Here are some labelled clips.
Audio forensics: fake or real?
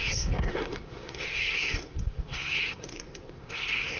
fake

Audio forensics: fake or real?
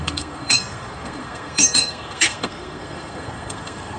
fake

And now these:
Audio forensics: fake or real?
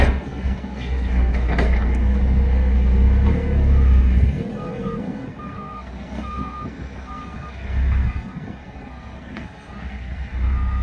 fake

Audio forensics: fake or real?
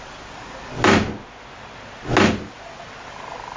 real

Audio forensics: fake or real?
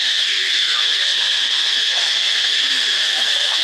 fake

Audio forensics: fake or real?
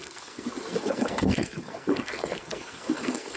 fake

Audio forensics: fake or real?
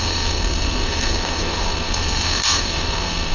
fake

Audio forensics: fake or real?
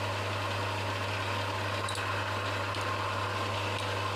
real